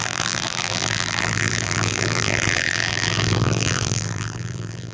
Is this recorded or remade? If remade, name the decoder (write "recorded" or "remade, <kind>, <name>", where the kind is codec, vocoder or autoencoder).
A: remade, vocoder, BigVGAN v2